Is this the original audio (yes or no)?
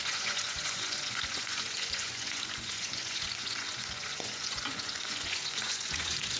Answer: no